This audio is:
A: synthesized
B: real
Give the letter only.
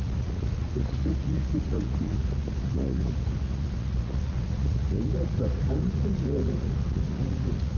A